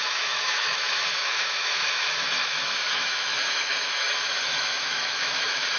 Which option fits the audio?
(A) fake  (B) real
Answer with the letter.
A